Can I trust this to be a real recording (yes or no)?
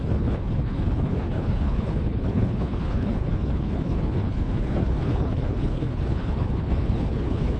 no